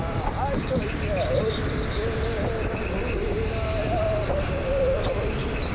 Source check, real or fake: real